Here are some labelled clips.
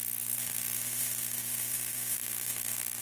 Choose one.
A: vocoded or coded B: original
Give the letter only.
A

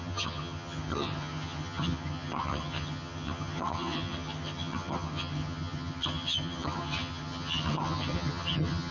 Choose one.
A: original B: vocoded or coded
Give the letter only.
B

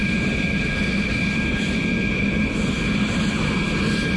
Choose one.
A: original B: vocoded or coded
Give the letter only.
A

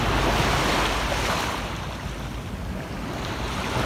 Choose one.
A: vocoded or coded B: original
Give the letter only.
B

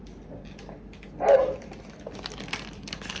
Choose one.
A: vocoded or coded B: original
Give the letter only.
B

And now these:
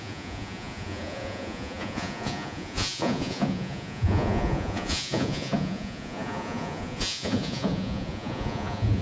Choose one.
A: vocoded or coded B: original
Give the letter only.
A